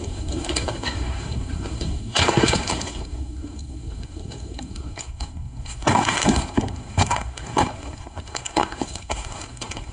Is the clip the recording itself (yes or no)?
no